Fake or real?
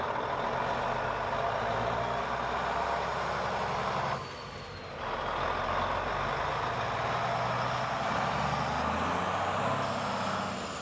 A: real